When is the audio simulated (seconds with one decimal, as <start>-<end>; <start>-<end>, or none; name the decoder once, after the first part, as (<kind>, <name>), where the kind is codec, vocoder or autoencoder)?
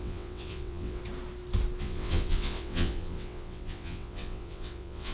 0.0-1.0 (vocoder, WaveNeXt); 1.8-5.1